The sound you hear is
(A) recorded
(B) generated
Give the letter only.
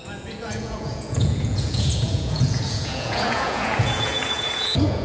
B